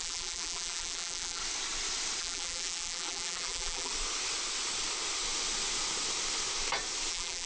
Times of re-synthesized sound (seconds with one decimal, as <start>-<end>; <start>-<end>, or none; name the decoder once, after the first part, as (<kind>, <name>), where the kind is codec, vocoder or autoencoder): 0.0-1.4 (vocoder, BigVGAN v2); 2.2-3.9; 7.1-7.5